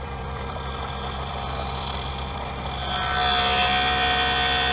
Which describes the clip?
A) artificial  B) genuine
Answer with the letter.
A